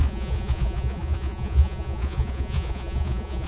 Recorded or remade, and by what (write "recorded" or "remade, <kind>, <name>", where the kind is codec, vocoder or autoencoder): remade, vocoder, Vocos